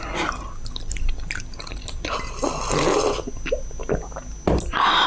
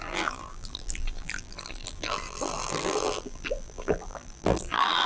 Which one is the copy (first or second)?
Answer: second